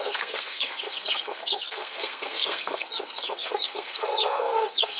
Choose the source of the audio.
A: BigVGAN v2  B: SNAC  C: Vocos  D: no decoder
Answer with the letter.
B